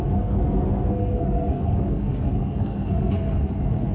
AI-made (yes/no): yes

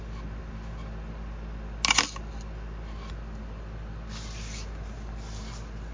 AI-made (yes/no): no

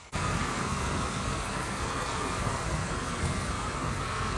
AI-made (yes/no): yes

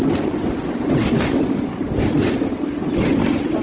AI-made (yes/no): no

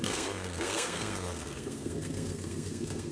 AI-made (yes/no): yes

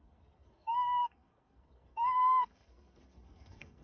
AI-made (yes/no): yes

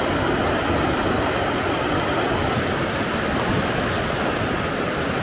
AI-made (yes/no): no